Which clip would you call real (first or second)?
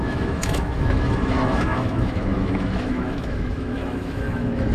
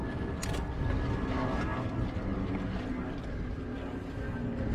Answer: second